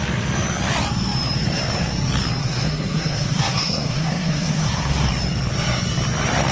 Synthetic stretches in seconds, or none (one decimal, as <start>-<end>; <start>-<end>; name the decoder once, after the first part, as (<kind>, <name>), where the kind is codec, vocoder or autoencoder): 2.4-5.1 (codec, SNAC)